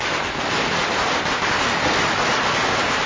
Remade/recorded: remade